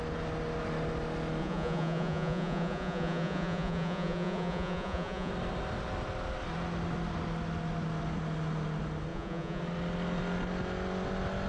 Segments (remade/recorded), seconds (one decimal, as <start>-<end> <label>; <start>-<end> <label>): 0.0-1.4 recorded; 1.4-5.3 remade; 5.3-9.1 recorded; 9.1-9.6 remade; 9.6-11.5 recorded